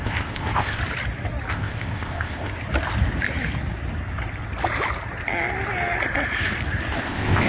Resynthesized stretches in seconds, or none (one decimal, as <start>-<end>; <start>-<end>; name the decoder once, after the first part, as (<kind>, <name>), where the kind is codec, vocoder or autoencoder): 0.0-0.8 (codec, ZipCodec); 1.5-2.5; 7.0-7.5